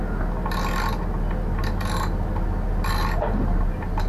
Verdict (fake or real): real